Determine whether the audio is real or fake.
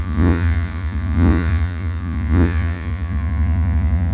fake